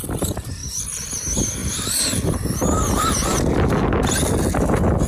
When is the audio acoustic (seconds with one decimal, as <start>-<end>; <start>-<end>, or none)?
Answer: 0.0-0.6; 1.1-5.1